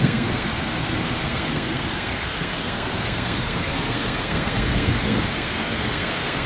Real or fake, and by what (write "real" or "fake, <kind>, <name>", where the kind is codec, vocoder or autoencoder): fake, codec, SNAC